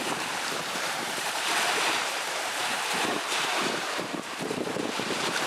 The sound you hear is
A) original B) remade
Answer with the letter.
B